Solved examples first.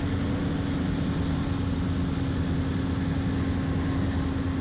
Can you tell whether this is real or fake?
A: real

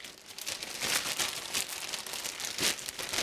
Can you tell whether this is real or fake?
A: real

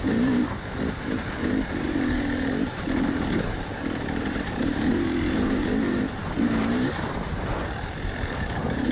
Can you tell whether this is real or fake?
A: fake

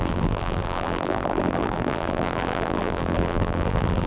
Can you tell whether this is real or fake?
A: fake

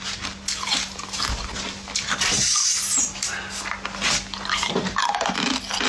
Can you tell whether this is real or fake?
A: real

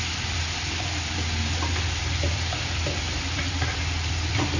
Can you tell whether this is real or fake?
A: fake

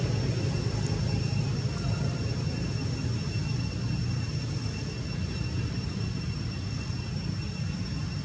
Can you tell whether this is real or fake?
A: real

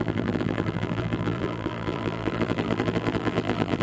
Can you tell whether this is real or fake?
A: fake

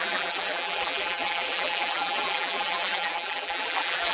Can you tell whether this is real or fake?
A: fake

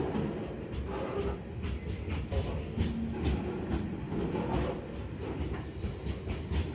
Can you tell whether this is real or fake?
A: real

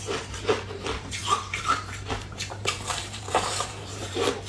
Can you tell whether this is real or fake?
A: fake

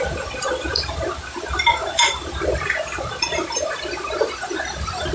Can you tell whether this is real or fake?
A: fake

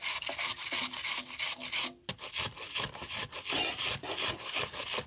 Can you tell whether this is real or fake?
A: real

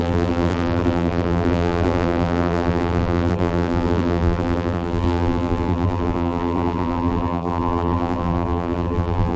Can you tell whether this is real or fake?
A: fake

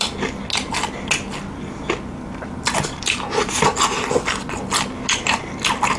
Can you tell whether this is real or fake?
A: real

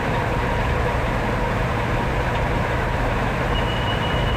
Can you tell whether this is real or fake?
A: fake